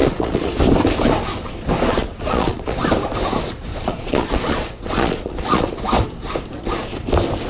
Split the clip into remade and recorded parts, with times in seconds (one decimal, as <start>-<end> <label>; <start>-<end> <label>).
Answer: 0.0-0.6 remade; 0.6-1.9 recorded; 1.9-2.8 remade; 2.8-3.7 recorded; 3.7-5.7 remade; 5.7-7.5 recorded